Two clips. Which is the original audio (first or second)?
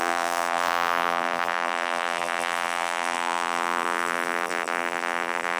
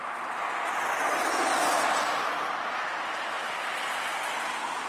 second